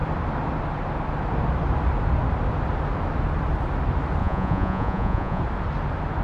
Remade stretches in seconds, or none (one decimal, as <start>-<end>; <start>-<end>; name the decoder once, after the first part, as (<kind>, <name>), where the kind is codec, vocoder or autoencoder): 4.2-5.4 (vocoder, Vocos)